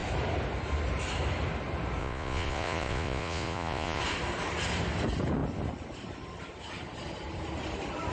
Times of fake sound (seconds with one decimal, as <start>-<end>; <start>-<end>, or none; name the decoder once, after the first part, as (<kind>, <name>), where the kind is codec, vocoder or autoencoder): 2.0-4.0 (vocoder, Vocos)